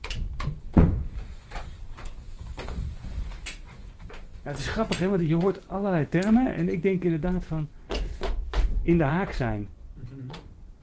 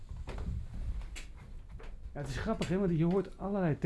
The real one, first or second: second